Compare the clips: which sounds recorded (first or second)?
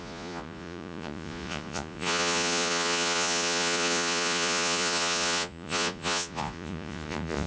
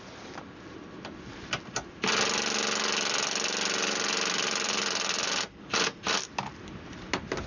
second